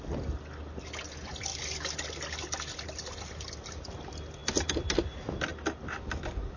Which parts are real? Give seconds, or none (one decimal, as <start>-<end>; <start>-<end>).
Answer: 0.0-6.6